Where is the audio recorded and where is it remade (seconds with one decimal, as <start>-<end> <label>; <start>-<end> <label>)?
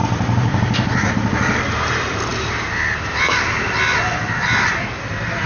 0.0-5.5 recorded